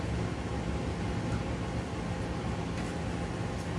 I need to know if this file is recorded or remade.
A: recorded